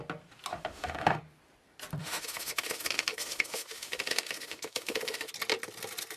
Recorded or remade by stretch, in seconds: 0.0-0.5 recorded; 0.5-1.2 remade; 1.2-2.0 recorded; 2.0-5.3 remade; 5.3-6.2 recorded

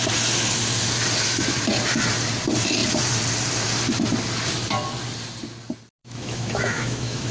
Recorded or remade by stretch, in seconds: 0.0-6.0 recorded; 6.0-7.3 remade

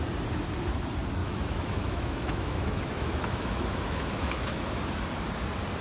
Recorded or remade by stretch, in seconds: 0.0-1.2 recorded; 1.2-4.7 remade; 4.7-5.8 recorded

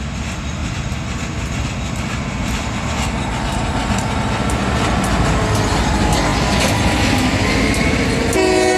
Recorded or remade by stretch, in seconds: 0.0-8.8 recorded

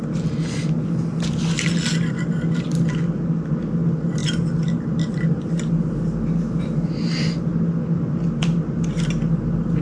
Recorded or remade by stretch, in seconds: 0.0-9.8 recorded